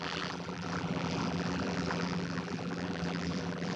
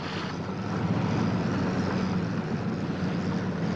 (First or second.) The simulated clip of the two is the first